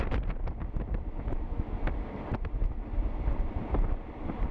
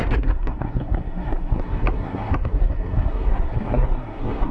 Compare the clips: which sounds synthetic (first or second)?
second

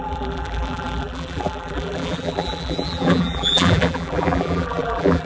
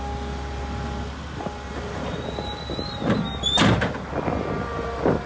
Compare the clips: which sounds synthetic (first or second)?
first